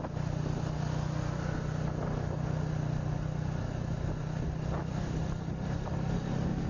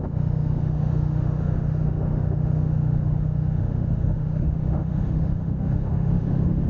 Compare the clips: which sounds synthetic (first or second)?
second